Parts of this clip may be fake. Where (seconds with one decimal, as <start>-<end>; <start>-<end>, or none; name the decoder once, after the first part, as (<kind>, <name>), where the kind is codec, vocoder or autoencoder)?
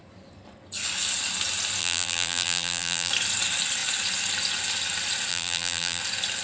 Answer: 1.8-3.1 (vocoder, BigVGAN v2); 5.3-6.0